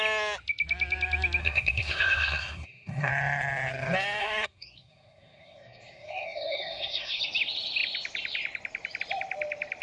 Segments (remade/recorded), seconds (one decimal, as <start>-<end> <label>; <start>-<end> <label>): 0.0-1.4 recorded; 1.4-3.1 remade; 3.1-4.2 recorded; 4.2-7.2 remade; 7.2-9.8 recorded